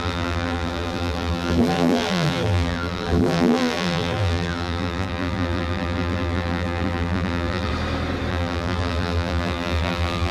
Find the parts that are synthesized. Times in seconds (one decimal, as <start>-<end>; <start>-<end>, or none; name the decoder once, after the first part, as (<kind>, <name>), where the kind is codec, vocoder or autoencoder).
0.0-7.7 (vocoder, BigVGAN v2); 8.3-10.3